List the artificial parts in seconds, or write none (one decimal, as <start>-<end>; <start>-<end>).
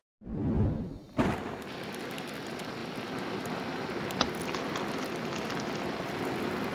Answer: none